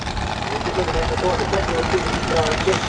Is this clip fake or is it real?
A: real